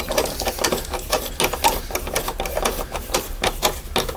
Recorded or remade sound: recorded